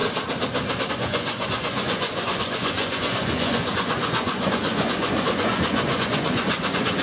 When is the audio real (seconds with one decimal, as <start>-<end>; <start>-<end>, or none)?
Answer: 0.0-0.9